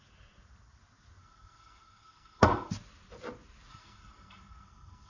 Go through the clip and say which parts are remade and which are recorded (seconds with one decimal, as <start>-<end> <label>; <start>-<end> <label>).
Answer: 0.0-1.2 recorded; 1.2-2.7 remade; 2.7-3.7 recorded; 3.7-5.1 remade